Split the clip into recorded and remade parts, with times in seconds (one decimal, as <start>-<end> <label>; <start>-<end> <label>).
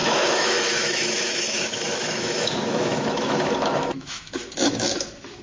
0.0-5.4 remade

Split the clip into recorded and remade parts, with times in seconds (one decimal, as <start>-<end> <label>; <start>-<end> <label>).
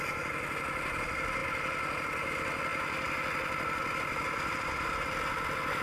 0.0-5.8 recorded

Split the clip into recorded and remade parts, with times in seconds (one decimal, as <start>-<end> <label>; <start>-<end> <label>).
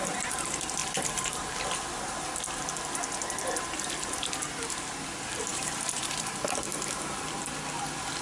0.0-0.8 recorded; 0.8-1.4 remade; 1.4-5.5 recorded; 5.5-6.3 remade; 6.3-6.7 recorded; 6.7-7.4 remade; 7.4-8.2 recorded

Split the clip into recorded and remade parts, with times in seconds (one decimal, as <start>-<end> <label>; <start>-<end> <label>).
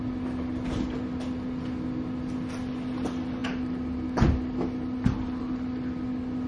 0.0-6.5 recorded